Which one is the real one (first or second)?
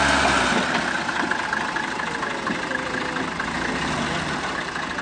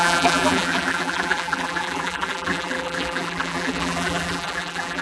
first